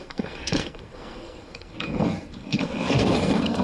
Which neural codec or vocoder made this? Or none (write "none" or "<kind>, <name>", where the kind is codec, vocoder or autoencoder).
codec, SNAC